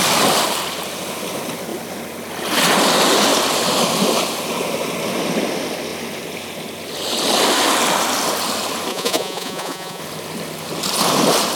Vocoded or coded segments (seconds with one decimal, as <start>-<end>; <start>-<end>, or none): 8.9-10.0